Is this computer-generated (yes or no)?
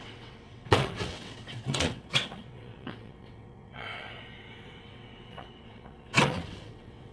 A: yes